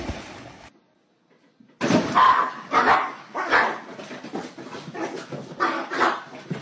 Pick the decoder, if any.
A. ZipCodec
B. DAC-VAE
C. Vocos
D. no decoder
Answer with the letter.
D